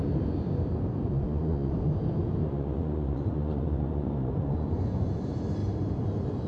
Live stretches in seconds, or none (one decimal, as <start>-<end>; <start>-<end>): 0.0-1.1; 1.9-2.4; 5.1-6.5